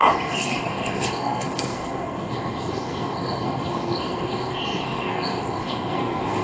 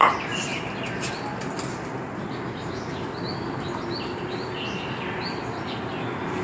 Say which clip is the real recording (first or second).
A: second